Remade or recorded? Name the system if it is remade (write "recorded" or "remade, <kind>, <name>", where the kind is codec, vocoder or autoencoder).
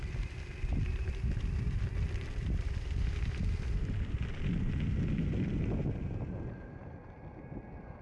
recorded